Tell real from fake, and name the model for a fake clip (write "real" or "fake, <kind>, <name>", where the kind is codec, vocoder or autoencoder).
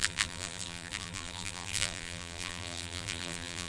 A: fake, vocoder, BigVGAN v2